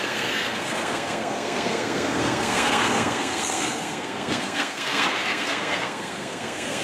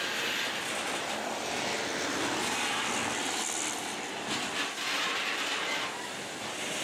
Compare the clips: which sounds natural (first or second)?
second